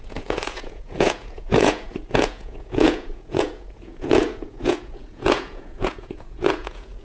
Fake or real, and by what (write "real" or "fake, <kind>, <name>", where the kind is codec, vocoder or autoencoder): fake, vocoder, Vocos